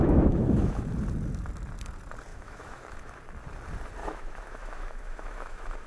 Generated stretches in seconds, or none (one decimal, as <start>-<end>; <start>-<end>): 0.0-0.8; 2.3-3.2; 4.0-5.9